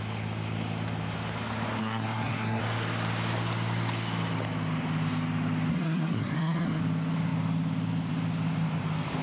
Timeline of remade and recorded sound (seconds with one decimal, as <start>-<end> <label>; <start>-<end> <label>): 0.0-1.8 recorded; 1.8-2.6 remade; 2.6-5.7 recorded; 5.7-6.8 remade; 6.8-9.2 recorded